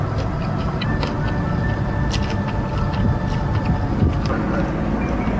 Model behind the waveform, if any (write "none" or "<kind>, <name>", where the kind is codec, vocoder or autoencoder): none